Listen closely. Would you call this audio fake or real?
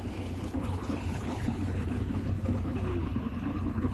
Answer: fake